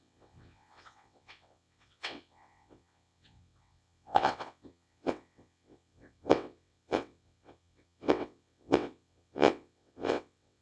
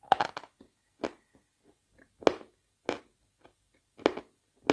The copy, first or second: first